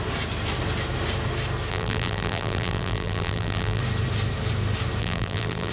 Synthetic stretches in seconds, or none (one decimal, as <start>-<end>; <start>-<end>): 1.7-3.8; 5.0-5.7